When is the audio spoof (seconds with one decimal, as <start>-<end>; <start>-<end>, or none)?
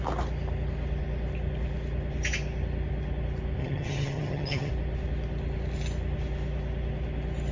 3.6-4.7